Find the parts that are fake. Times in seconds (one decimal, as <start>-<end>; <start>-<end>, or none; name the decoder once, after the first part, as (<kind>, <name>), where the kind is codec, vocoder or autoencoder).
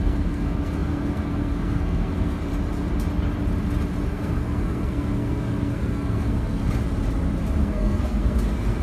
0.0-2.5 (codec, SNAC); 4.1-6.6; 7.6-8.8